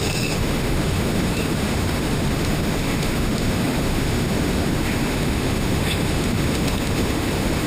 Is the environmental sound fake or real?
fake